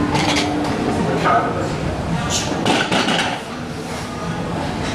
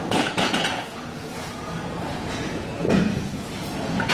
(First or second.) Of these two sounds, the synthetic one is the second